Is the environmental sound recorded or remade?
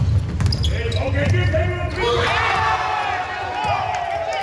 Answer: recorded